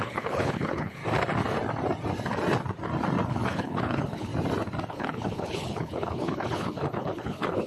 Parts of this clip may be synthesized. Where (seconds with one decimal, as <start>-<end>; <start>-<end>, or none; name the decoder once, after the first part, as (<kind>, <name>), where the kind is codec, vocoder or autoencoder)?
0.0-1.0 (codec, HILCodec); 3.3-4.3; 4.9-7.7